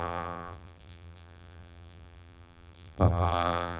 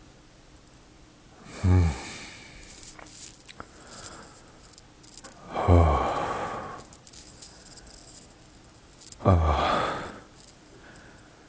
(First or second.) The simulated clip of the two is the first